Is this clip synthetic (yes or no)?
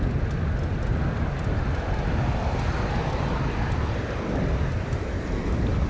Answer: no